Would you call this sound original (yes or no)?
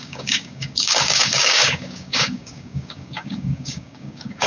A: no